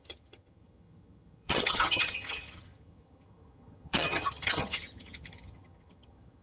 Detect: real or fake fake